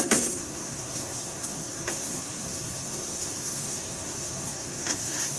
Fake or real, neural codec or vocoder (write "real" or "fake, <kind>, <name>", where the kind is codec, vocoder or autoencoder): fake, codec, SNAC